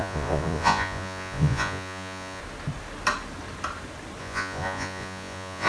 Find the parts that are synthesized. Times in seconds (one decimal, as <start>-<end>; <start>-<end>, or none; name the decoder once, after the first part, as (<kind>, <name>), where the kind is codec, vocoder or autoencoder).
0.0-2.4 (vocoder, Vocos); 4.2-5.7